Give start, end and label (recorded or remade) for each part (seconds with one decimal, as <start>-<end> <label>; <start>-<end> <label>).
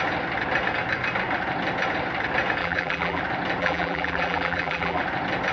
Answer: 0.0-2.6 recorded; 2.6-3.2 remade; 3.2-3.6 recorded; 3.6-5.0 remade; 5.0-5.5 recorded